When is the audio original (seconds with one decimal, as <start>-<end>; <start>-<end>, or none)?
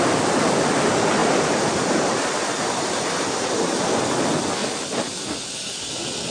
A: 0.0-1.2; 3.8-6.3